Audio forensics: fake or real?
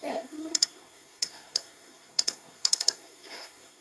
fake